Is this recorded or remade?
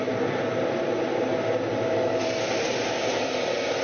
recorded